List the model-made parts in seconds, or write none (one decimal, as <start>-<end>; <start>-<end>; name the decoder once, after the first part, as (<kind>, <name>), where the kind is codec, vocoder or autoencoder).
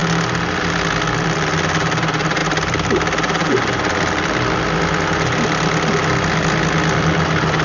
none